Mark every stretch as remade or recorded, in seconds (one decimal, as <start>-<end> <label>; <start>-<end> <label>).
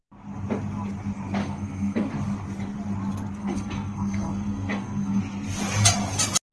0.0-1.4 recorded; 1.4-2.1 remade; 2.1-3.4 recorded; 3.4-5.2 remade; 5.2-6.5 recorded